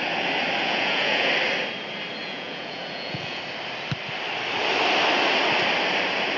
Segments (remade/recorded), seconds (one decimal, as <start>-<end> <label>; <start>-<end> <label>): 0.0-0.6 recorded; 0.6-1.3 remade; 1.3-2.2 recorded; 2.2-3.4 remade; 3.4-6.4 recorded